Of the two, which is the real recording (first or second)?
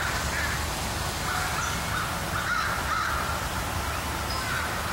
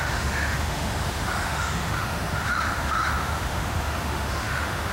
first